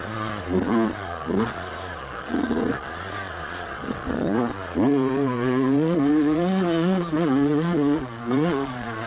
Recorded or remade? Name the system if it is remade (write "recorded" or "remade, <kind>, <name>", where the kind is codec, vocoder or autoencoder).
remade, vocoder, Vocos